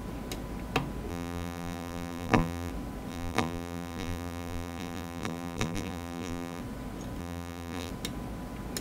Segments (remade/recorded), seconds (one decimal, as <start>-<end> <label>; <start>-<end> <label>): 0.0-1.1 recorded; 1.1-2.7 remade; 2.7-3.1 recorded; 3.1-6.6 remade; 6.6-7.2 recorded; 7.2-7.9 remade; 7.9-8.8 recorded